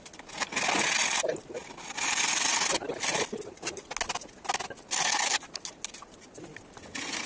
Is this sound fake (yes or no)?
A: no